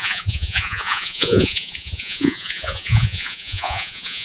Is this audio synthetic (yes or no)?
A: yes